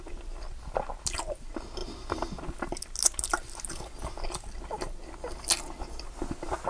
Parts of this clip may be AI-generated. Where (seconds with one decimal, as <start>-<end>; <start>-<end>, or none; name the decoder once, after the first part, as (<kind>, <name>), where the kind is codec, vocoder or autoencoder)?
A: none